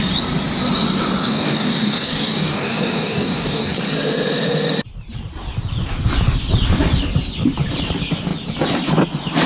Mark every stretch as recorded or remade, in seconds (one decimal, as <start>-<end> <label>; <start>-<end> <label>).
0.0-1.2 recorded; 1.2-3.8 remade; 3.8-9.5 recorded